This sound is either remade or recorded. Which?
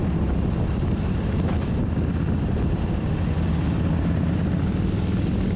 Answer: recorded